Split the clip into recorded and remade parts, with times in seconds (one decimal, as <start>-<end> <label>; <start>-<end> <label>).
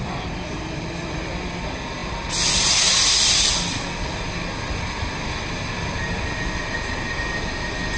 0.0-8.0 recorded